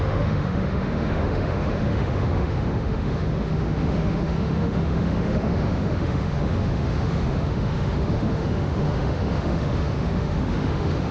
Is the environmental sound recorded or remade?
remade